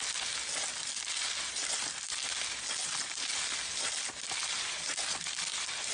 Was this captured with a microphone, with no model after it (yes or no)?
yes